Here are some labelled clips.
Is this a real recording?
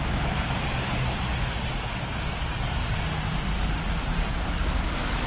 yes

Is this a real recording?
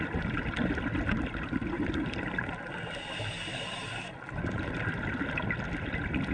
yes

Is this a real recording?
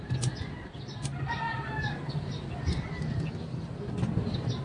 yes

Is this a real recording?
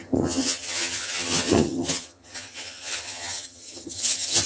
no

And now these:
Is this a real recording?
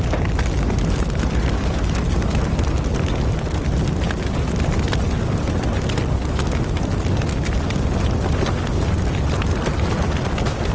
yes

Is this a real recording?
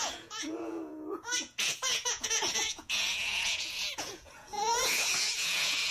no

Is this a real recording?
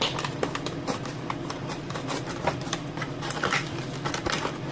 no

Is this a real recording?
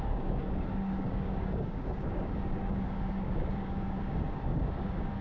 no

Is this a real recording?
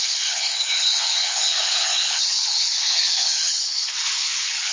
no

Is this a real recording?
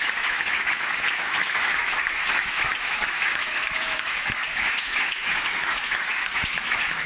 no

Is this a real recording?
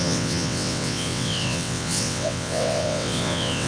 no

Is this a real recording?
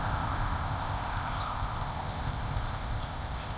no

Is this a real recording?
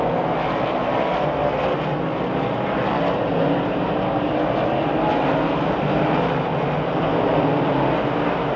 yes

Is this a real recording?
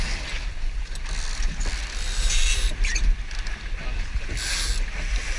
yes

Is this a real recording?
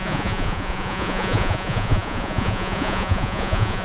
no